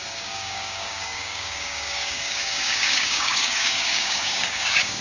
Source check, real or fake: fake